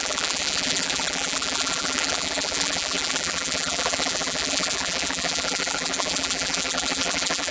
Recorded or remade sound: remade